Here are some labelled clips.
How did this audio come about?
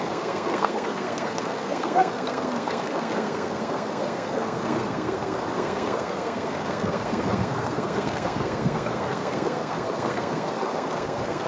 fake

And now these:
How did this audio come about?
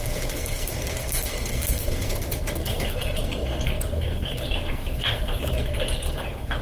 fake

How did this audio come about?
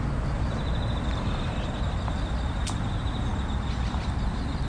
real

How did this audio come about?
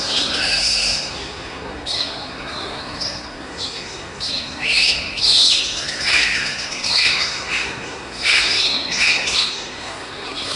fake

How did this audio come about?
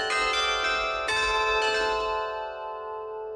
real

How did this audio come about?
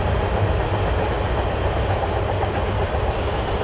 real